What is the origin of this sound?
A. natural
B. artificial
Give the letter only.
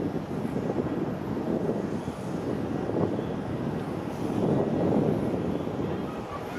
A